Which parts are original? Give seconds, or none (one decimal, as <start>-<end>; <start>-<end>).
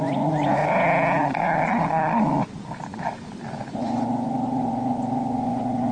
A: 0.6-3.7